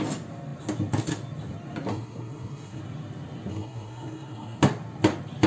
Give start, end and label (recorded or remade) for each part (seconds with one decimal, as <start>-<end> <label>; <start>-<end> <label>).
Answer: 0.0-1.9 recorded; 1.9-2.8 remade; 2.8-3.5 recorded; 3.5-4.6 remade; 4.6-5.5 recorded